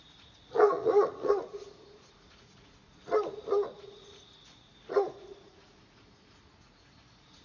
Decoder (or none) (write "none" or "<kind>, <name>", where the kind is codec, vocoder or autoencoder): vocoder, Vocos